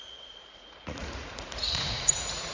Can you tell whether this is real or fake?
fake